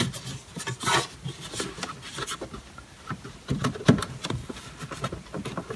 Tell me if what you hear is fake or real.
real